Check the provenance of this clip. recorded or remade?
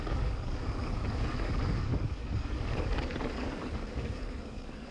remade